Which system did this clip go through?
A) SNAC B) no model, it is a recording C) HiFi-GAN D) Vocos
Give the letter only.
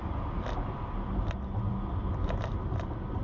B